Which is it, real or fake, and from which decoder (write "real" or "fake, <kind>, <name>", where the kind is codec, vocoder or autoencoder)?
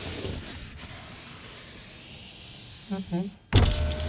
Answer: real